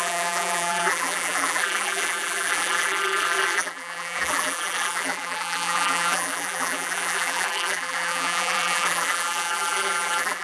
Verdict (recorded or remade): remade